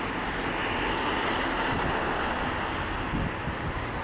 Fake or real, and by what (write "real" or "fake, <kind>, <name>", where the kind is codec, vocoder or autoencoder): real